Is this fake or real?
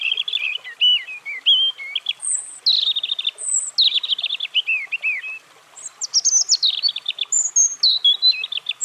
real